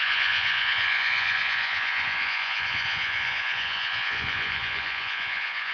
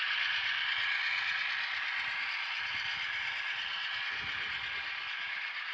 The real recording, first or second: second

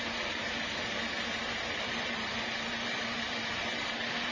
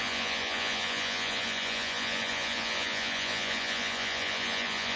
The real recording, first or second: first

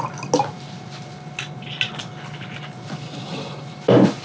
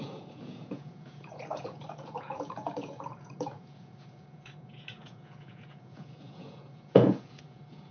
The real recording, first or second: first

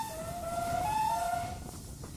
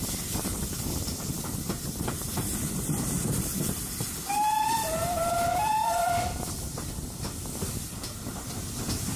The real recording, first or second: first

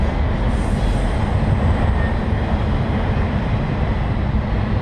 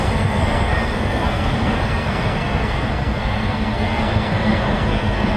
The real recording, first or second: first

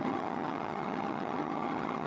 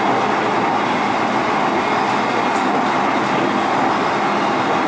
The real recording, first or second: second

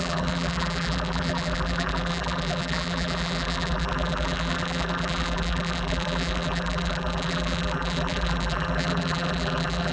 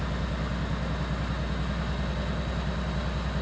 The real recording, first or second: second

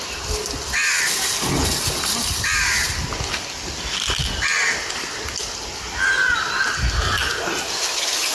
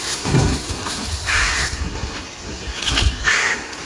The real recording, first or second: first